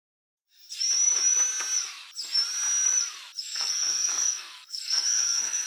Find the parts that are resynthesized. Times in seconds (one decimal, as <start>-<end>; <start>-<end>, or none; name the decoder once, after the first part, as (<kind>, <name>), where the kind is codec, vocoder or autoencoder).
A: 3.4-5.7 (codec, SNAC)